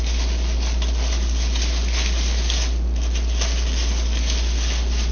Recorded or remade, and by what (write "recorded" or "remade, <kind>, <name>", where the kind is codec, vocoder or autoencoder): recorded